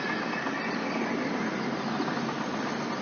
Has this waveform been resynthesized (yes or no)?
no